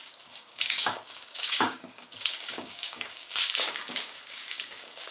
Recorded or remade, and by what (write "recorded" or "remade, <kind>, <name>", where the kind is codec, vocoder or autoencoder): remade, codec, DAC